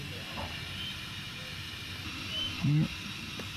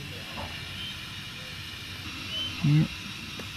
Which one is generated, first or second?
first